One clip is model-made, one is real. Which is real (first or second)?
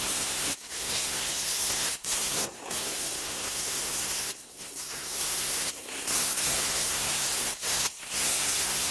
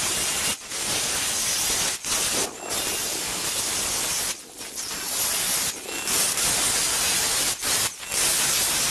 second